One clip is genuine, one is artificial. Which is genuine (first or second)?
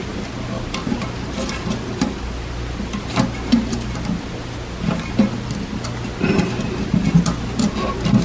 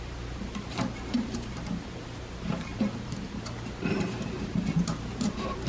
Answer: first